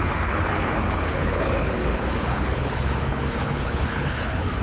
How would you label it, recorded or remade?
remade